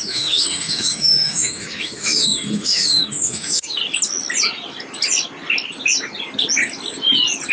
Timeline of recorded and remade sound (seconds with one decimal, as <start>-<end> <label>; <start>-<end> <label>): 0.0-3.8 remade; 3.8-7.5 recorded